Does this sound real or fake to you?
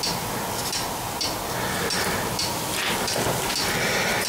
real